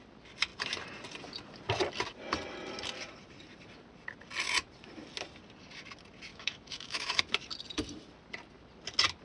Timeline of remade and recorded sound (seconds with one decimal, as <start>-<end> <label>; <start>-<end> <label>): 0.0-6.3 recorded; 6.3-7.2 remade; 7.2-9.2 recorded